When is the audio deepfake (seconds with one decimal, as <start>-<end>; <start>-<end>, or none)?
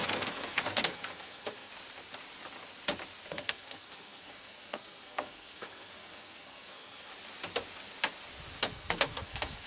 0.0-1.7; 3.3-7.1; 8.6-9.7